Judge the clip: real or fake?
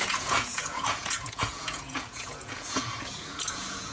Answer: fake